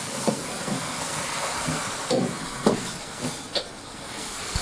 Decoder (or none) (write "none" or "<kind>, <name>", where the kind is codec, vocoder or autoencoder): codec, SNAC